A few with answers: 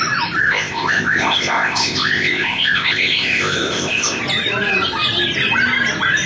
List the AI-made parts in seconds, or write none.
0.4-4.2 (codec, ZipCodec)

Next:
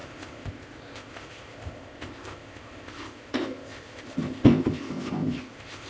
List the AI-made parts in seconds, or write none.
0.0-5.9 (codec, ZipCodec)

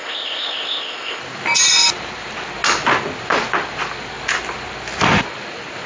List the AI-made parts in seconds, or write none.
0.0-1.2 (codec, ZipCodec)

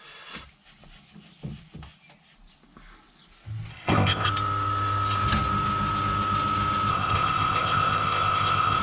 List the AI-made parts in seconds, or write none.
3.7-4.3 (codec, ZipCodec); 6.9-8.8

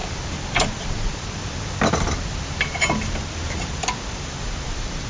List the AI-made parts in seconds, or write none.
none

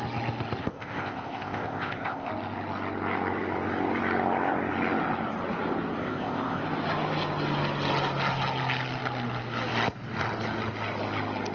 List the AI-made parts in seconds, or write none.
0.6-2.3 (codec, ZipCodec); 6.0-6.6